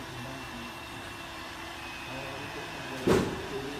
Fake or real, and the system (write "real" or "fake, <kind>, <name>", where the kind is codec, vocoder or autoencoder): fake, vocoder, BigVGAN v2